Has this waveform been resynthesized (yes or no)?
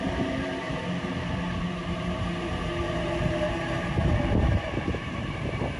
yes